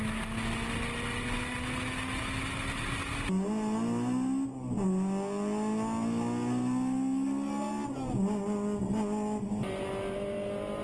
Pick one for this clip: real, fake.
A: real